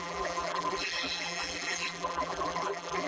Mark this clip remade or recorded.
remade